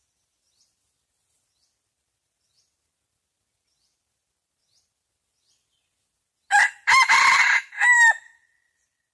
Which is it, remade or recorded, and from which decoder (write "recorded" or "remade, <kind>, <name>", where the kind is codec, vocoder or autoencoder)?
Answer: recorded